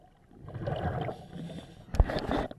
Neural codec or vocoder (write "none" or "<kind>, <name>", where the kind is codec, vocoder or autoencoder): none